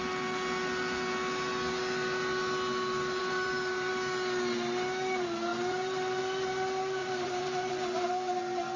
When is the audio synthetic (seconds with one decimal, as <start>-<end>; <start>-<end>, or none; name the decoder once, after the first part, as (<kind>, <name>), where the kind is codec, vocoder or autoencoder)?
3.2-3.9 (vocoder, BigVGAN v2); 5.5-6.2; 7.0-7.7